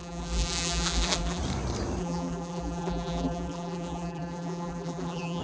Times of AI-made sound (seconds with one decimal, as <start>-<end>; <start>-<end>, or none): 0.0-1.4; 2.0-5.4